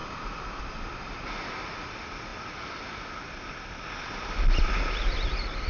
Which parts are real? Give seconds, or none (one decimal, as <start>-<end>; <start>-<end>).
0.0-5.7